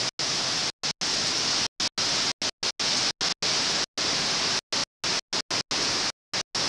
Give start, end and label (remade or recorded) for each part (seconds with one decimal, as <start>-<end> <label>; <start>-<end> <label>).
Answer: 0.0-6.7 recorded